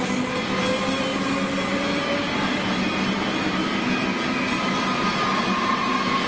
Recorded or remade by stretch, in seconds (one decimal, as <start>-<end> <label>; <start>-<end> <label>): 0.0-6.3 recorded